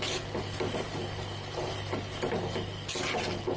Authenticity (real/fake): real